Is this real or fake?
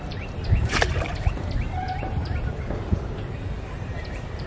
fake